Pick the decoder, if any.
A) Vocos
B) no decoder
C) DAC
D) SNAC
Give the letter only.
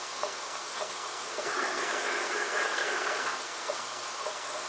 D